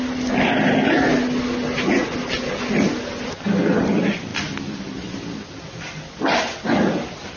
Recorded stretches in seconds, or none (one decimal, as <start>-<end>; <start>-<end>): 0.0-7.4